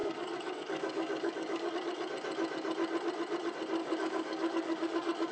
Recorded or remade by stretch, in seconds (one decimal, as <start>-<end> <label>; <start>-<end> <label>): 0.0-1.7 remade; 1.7-3.8 recorded; 3.8-5.3 remade

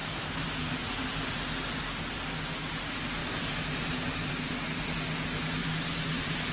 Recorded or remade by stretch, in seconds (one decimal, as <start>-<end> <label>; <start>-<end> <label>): 0.0-1.3 remade; 1.3-3.2 recorded; 3.2-4.3 remade; 4.3-5.6 recorded; 5.6-6.5 remade

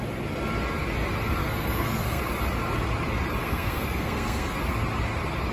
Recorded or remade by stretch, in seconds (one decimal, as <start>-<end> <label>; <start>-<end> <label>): 0.0-1.4 recorded; 1.4-2.2 remade; 2.2-3.4 recorded; 3.4-4.6 remade; 4.6-5.5 recorded

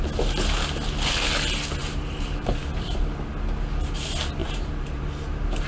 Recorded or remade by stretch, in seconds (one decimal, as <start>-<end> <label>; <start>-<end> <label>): 0.0-1.8 recorded; 1.8-3.0 remade; 3.0-4.4 recorded; 4.4-5.0 remade; 5.0-5.7 recorded

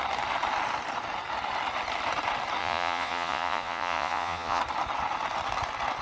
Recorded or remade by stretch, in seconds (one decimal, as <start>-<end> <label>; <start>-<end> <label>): 0.0-2.6 recorded; 2.6-4.6 remade; 4.6-6.0 recorded

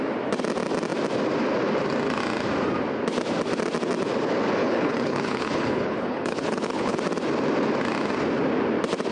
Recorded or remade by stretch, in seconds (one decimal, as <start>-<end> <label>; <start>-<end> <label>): 0.0-4.6 recorded; 4.6-7.0 remade; 7.0-9.1 recorded

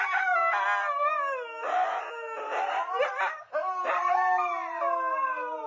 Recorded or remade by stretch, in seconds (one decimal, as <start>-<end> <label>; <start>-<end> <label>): 0.0-5.7 recorded

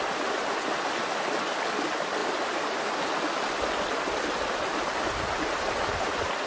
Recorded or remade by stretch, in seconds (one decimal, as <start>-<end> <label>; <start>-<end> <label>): 0.0-6.5 recorded